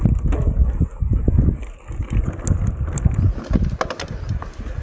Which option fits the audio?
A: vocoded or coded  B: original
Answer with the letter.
B